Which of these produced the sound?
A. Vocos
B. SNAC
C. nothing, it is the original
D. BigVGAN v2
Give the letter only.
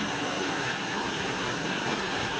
B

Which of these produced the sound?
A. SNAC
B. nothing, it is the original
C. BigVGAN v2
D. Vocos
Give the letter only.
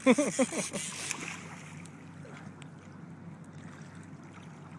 B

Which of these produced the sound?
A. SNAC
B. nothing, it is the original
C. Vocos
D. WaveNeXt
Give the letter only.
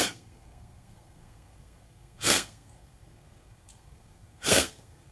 A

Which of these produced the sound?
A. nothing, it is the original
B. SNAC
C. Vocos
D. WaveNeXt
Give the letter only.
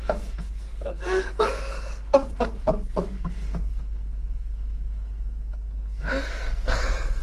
B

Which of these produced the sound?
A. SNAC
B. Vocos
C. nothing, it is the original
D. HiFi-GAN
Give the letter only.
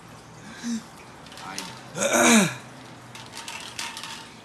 C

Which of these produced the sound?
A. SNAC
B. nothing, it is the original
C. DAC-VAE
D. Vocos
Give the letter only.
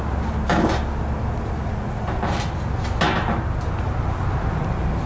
B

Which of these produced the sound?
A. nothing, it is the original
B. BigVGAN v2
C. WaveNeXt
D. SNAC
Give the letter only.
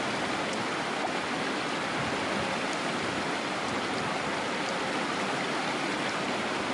A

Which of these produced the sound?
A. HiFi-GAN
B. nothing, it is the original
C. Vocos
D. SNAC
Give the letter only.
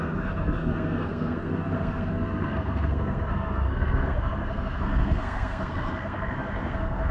D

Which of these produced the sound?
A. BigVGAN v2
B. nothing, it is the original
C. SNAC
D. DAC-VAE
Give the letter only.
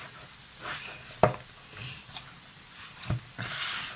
B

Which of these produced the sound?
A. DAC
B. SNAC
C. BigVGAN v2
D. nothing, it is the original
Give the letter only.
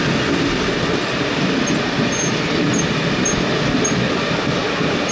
D